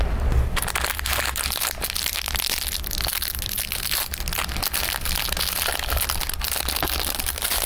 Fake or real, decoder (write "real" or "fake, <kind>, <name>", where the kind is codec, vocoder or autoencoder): real